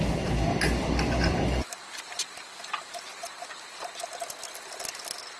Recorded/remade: recorded